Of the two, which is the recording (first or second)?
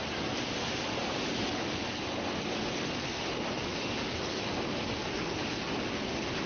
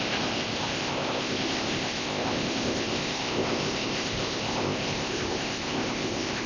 first